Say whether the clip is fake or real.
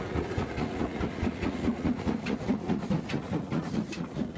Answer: fake